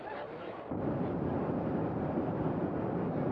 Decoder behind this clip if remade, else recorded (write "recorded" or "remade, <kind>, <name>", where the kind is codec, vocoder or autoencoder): remade, vocoder, BigVGAN v2